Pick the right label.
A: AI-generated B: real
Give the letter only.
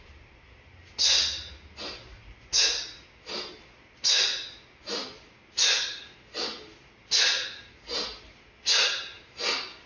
B